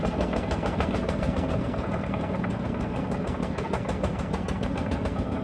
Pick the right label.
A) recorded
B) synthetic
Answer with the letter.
B